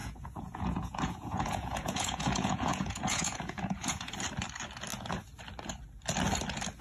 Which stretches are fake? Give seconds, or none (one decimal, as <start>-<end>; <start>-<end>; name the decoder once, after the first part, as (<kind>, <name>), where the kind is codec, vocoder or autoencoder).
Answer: 0.0-4.1 (vocoder, Vocos)